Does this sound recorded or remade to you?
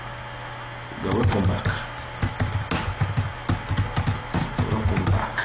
recorded